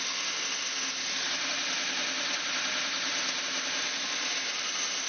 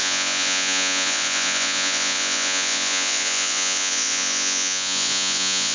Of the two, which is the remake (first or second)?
second